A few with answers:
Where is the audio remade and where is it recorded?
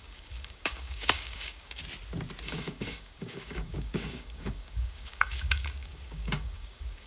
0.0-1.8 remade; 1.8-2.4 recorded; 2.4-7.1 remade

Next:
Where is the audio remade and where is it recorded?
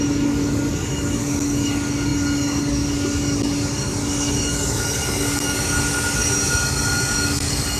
0.0-7.8 remade